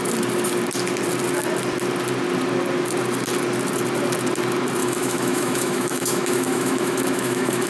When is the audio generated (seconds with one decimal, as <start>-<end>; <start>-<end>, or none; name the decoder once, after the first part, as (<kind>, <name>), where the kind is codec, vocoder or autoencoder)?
4.8-7.7 (autoencoder, DAC-VAE)